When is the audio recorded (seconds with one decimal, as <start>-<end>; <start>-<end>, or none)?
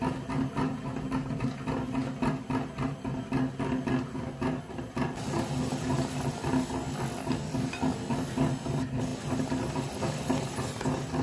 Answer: 0.0-11.2